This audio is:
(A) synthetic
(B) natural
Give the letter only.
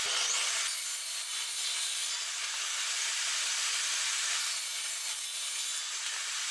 B